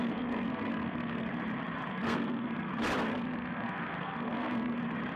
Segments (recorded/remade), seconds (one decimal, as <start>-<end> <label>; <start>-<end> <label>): 0.0-1.3 remade; 1.3-1.9 recorded; 1.9-2.7 remade; 2.7-3.1 recorded; 3.1-4.8 remade; 4.8-5.2 recorded